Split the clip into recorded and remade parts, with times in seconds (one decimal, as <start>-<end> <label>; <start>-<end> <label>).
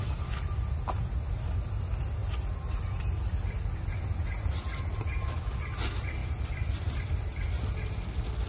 0.0-6.2 recorded; 6.2-6.9 remade; 6.9-8.5 recorded